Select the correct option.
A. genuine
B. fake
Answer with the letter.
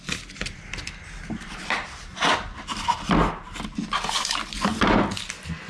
A